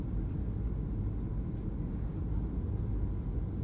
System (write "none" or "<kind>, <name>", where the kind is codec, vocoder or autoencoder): none